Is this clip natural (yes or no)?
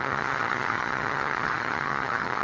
no